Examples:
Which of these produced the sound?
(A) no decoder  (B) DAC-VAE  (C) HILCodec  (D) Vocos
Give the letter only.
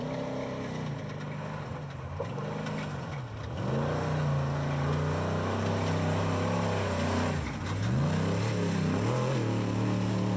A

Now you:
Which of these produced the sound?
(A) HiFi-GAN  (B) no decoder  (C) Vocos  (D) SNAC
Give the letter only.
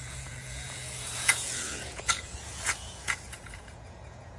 C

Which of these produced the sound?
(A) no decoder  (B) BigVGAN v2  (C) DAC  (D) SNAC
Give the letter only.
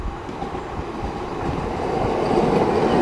A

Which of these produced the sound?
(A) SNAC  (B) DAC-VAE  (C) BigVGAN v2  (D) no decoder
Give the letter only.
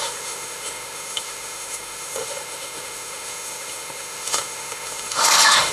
B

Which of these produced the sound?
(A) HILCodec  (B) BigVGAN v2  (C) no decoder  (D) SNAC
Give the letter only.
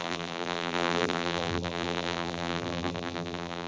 B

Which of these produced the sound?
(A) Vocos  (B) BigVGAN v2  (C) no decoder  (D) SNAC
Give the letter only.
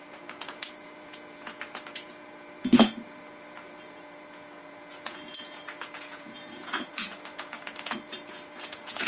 A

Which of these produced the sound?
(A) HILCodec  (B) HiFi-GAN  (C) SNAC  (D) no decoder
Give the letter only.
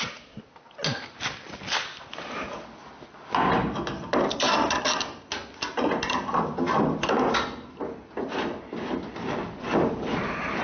D